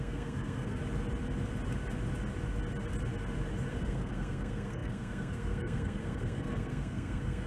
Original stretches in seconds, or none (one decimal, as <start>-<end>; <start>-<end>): 0.8-3.7